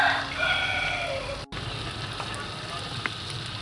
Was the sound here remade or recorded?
recorded